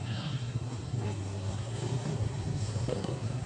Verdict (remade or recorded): remade